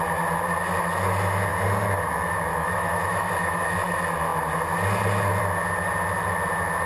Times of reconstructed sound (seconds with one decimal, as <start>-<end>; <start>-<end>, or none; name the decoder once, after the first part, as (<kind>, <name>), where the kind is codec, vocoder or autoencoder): 2.5-3.7 (autoencoder, DAC-VAE)